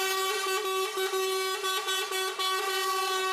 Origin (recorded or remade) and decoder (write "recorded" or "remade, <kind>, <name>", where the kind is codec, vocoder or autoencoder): recorded